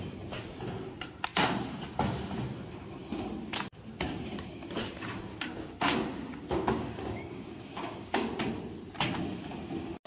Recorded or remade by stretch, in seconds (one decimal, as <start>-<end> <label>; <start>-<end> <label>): 0.0-5.3 recorded; 5.3-8.4 remade; 8.4-10.1 recorded

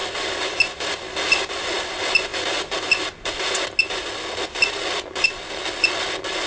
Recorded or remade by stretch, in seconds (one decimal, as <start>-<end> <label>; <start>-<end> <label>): 0.0-6.5 recorded